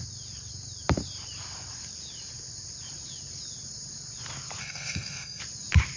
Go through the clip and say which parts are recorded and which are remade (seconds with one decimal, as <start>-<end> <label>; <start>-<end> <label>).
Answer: 0.0-4.6 recorded; 4.6-5.4 remade; 5.4-6.0 recorded